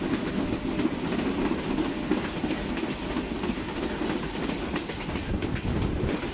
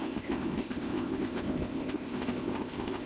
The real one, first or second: first